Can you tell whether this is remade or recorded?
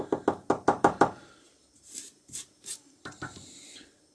recorded